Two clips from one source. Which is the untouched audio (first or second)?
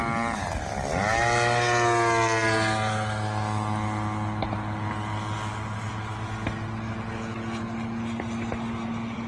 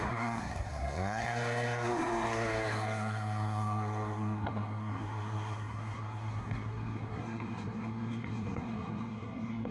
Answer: first